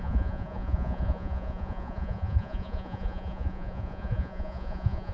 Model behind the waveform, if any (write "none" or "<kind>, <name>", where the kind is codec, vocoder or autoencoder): vocoder, Vocos